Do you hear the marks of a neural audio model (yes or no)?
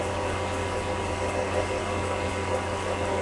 yes